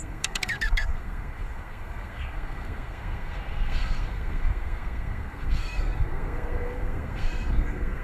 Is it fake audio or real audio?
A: fake